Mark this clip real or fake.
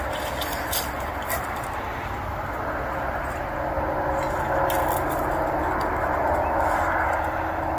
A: real